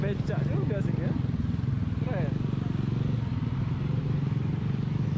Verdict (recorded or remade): recorded